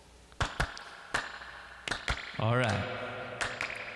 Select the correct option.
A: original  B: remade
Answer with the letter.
A